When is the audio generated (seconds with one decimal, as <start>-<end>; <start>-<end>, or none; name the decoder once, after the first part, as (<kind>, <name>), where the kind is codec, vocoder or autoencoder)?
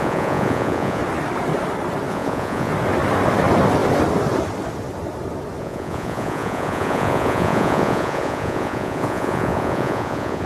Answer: 0.0-1.0 (vocoder, Vocos); 2.1-2.7; 5.6-10.5